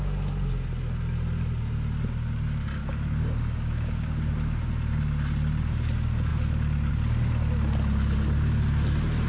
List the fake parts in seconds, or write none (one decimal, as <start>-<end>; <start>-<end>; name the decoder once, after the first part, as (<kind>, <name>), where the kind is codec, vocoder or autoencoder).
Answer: 3.2-4.3 (codec, DAC)